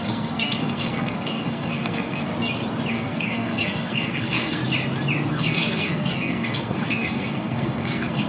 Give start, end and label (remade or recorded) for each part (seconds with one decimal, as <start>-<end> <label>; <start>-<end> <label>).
0.0-2.3 remade; 2.3-2.9 recorded; 2.9-4.6 remade; 4.6-5.3 recorded; 5.3-8.3 remade